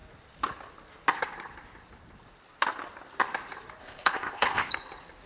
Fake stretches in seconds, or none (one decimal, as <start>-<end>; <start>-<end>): 3.8-4.7